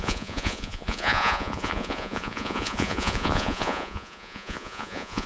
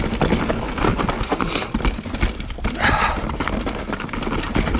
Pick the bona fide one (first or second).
second